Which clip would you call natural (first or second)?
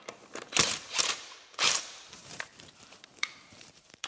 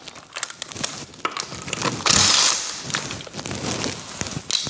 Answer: second